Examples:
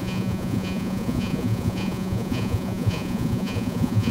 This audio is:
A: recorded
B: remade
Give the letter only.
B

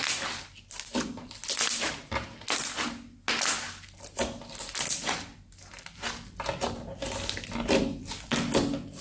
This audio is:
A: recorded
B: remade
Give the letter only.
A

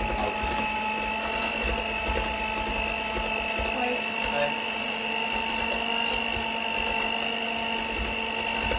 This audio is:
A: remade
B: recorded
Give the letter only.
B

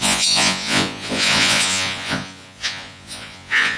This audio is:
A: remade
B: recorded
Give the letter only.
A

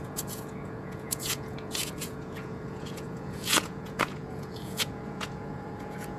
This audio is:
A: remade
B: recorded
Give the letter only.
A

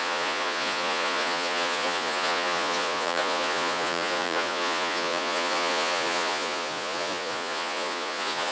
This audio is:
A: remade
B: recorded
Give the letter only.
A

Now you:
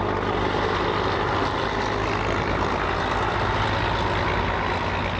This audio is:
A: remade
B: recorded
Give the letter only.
B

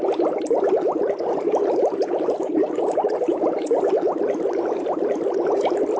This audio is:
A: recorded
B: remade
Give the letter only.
A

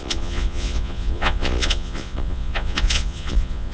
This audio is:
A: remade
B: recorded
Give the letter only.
A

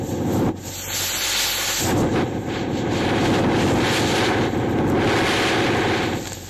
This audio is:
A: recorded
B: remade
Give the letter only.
A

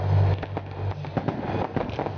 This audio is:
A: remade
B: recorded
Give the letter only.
B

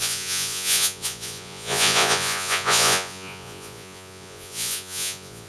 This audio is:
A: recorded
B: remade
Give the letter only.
B